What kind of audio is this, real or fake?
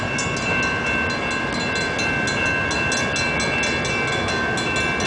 real